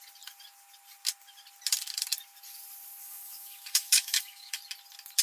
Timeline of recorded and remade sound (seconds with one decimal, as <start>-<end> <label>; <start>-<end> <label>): 0.0-3.0 recorded; 3.0-4.6 remade; 4.6-5.2 recorded